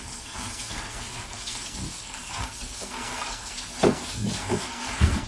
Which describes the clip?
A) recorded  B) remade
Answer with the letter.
B